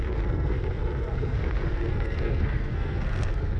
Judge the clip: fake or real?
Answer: fake